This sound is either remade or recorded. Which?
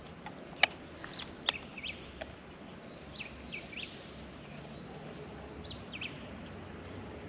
recorded